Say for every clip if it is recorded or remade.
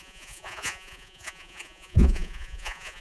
remade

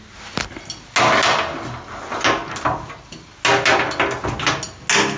recorded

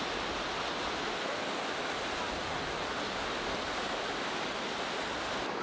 recorded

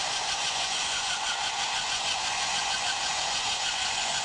remade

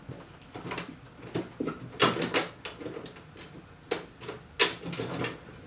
recorded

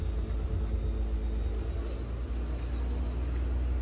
recorded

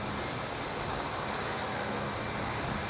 recorded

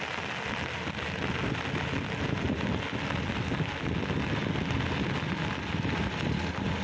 recorded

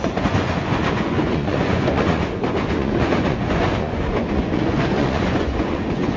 remade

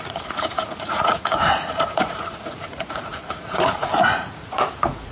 remade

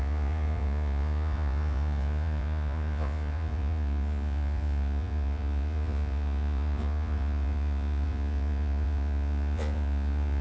remade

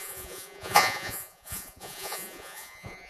remade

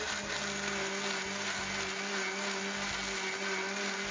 recorded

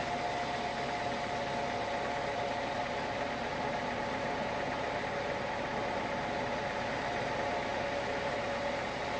recorded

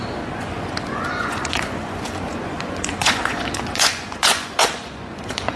remade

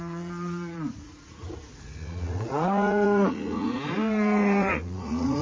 remade